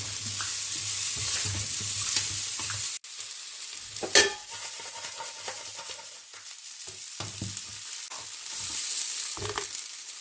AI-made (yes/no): no